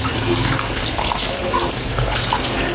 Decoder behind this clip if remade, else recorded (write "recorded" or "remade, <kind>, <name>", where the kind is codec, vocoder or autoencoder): remade, codec, SNAC